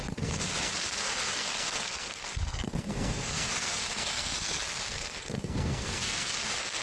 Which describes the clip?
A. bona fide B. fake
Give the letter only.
B